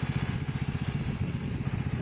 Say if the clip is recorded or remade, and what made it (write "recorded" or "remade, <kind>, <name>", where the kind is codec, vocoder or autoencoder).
recorded